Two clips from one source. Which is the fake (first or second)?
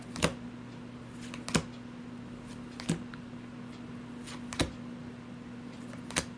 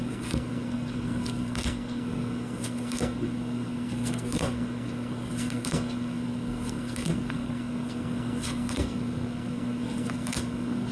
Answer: second